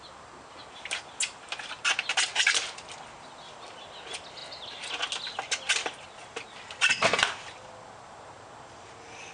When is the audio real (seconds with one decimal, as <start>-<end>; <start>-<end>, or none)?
0.0-9.3